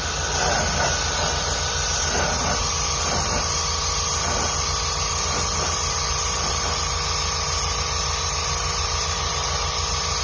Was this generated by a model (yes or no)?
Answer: no